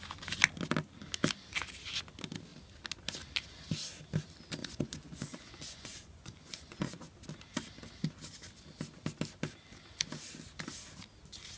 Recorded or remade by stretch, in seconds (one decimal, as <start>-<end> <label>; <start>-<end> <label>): 0.0-4.6 recorded; 4.6-7.1 remade; 7.1-11.6 recorded